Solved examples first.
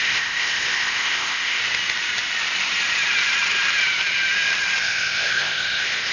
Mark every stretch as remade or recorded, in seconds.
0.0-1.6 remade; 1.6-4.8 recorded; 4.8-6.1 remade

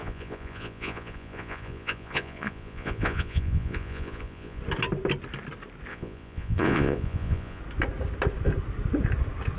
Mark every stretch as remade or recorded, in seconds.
0.0-4.6 remade; 4.6-5.9 recorded; 5.9-7.6 remade; 7.6-9.6 recorded

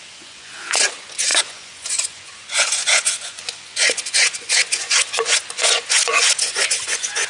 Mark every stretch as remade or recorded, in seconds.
0.0-7.3 remade

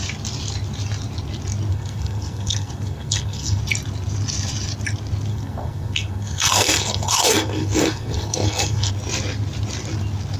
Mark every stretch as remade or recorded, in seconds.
0.0-1.7 recorded; 1.7-3.6 remade; 3.6-5.3 recorded; 5.3-8.9 remade; 8.9-10.4 recorded

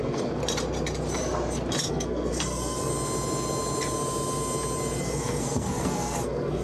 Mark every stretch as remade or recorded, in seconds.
0.0-0.4 remade; 0.4-1.9 recorded; 1.9-2.9 remade; 2.9-5.0 recorded; 5.0-6.6 remade

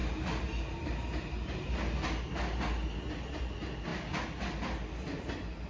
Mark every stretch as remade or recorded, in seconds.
0.0-5.7 recorded

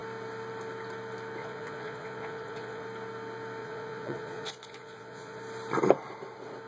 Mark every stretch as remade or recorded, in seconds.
0.0-1.4 recorded; 1.4-2.8 remade; 2.8-3.6 recorded; 3.6-5.4 remade; 5.4-6.7 recorded